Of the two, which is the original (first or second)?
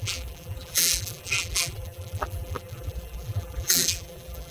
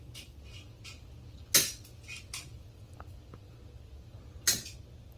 second